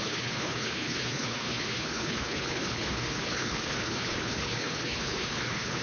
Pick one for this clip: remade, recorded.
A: remade